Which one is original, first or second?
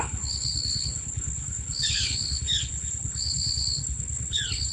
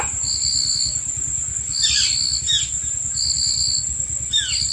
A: second